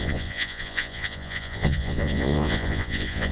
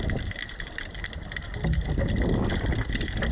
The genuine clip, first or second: second